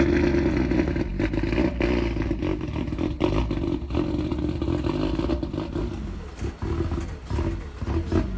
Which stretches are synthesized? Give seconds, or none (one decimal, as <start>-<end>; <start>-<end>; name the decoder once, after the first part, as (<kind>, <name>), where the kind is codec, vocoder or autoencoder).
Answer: 2.5-3.4 (vocoder, BigVGAN v2)